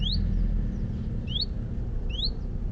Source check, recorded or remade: recorded